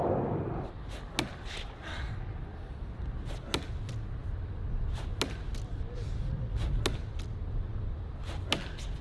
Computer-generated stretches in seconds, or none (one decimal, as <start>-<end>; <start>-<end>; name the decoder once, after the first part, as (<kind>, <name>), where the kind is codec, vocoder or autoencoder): none